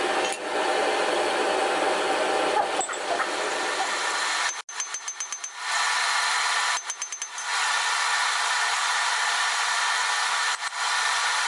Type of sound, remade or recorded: recorded